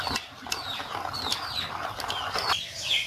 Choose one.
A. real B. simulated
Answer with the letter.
A